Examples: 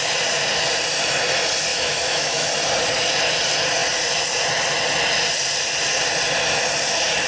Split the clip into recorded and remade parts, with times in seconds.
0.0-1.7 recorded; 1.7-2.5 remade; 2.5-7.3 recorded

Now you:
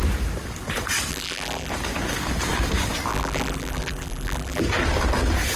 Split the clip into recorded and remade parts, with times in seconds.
0.0-1.1 recorded; 1.1-1.7 remade; 1.7-3.1 recorded; 3.1-4.6 remade; 4.6-5.6 recorded

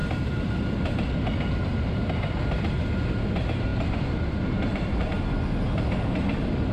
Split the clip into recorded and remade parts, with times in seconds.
0.0-3.7 recorded; 3.7-5.1 remade; 5.1-6.7 recorded